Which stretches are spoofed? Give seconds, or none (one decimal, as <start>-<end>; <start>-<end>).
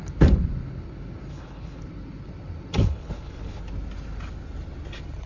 1.3-1.8; 2.8-3.6